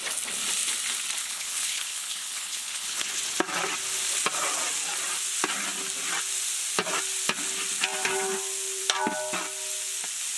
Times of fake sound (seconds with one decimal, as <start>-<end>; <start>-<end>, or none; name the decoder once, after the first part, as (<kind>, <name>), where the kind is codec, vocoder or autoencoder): 1.2-3.2 (codec, HILCodec)